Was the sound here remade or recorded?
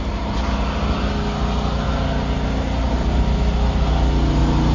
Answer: recorded